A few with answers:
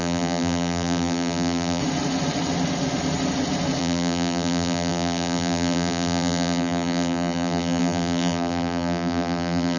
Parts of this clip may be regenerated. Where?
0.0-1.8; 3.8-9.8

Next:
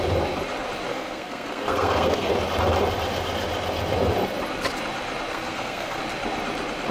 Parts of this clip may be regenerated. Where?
0.9-2.3; 5.3-6.0

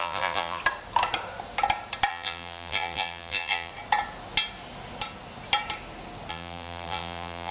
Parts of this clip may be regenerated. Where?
0.0-0.6; 2.1-3.7; 6.3-7.5

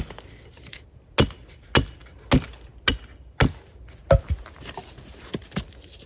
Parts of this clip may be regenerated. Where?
none